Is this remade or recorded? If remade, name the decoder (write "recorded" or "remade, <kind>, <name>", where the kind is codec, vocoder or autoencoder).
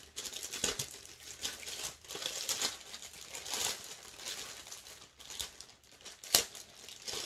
recorded